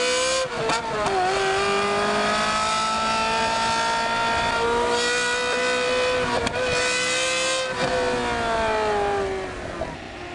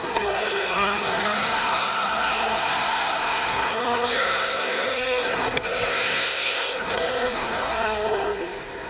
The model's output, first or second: second